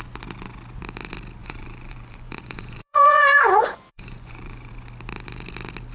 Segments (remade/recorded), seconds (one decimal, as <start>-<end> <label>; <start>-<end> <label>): 0.0-1.4 recorded; 1.4-4.7 remade; 4.7-5.9 recorded

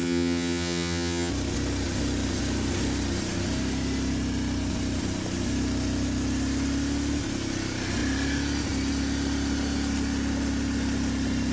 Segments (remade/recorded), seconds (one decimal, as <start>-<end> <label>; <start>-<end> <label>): 0.0-1.3 remade; 1.3-11.5 recorded

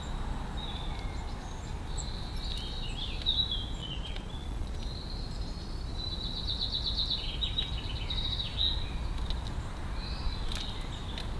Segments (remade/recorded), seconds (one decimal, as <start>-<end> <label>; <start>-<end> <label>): 0.0-3.8 recorded; 3.8-4.8 remade; 4.8-11.4 recorded